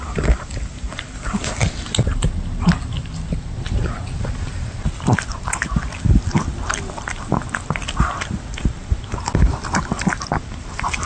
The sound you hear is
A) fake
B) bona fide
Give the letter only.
B